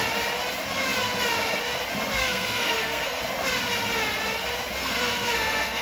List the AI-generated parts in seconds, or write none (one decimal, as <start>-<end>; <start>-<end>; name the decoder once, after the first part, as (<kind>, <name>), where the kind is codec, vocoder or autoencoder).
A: 2.2-3.2 (codec, SNAC); 4.8-5.8